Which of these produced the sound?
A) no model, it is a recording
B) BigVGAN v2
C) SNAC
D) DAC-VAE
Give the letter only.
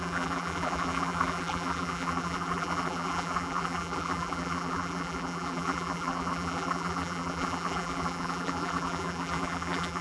B